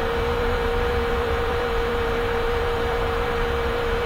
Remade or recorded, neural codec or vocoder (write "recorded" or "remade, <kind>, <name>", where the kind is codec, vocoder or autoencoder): remade, vocoder, BigVGAN v2